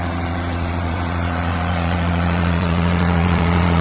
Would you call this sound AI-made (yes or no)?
yes